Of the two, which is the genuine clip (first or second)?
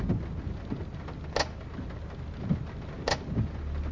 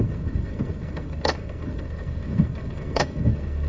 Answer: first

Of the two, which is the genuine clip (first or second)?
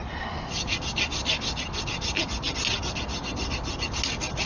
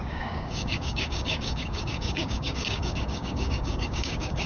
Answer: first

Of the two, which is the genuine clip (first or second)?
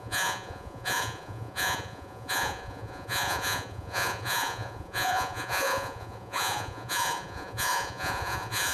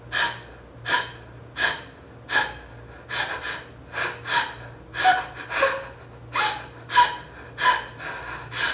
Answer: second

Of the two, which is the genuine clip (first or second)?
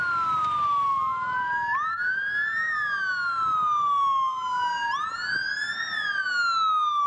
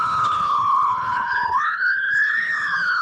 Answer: first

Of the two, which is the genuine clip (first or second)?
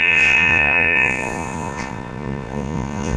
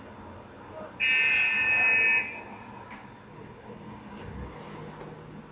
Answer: second